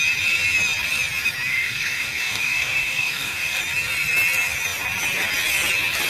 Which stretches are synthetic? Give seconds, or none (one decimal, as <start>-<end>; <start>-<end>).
1.5-3.6